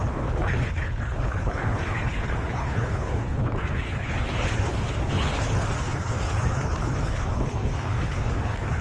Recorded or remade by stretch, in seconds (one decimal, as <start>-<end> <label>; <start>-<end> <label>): 0.0-8.8 remade

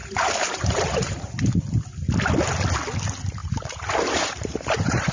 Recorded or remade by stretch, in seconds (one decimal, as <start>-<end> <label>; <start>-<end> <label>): 0.0-1.3 remade; 1.3-3.4 recorded; 3.4-5.1 remade